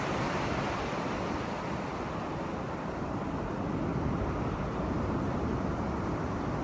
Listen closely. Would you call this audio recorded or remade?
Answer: recorded